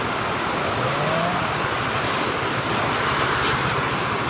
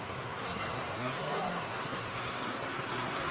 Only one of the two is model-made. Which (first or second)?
second